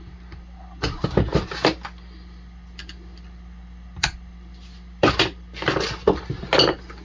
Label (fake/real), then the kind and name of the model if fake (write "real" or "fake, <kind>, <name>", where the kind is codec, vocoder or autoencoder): real